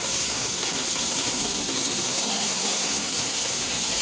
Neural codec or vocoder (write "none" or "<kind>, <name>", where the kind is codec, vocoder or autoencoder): codec, SNAC